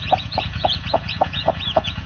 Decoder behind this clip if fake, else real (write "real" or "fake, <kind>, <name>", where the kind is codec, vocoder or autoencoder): fake, vocoder, Vocos